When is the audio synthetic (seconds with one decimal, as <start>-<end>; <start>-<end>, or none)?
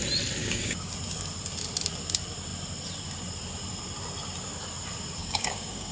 0.4-0.9; 5.2-5.9